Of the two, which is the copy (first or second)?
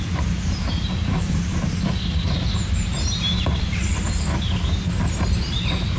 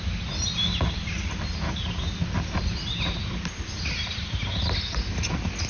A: first